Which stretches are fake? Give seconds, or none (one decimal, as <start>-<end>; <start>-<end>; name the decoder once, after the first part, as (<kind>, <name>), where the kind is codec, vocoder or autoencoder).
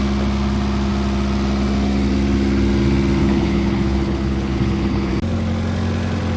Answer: 3.2-5.1 (codec, HILCodec)